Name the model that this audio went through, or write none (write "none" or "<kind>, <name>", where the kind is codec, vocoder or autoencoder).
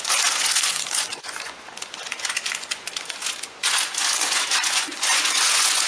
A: vocoder, Vocos